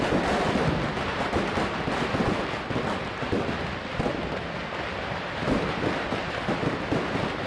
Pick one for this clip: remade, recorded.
recorded